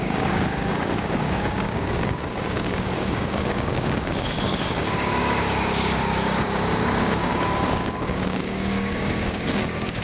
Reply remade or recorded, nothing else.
remade